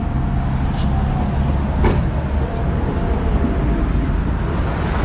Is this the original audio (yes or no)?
yes